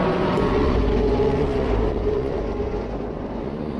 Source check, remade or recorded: remade